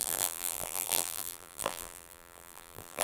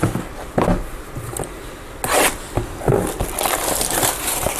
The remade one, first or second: first